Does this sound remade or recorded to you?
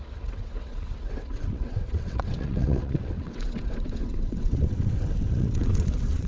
remade